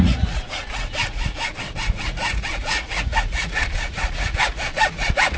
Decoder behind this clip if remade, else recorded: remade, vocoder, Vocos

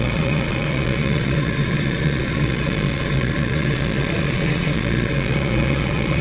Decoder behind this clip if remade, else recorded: remade, vocoder, Vocos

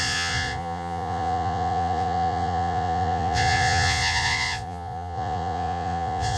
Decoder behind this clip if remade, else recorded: remade, vocoder, Vocos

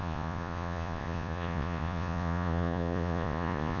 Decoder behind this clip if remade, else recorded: remade, vocoder, Vocos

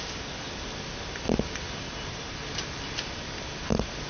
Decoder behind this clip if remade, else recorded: recorded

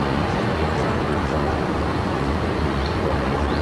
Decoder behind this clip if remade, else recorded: remade, vocoder, Vocos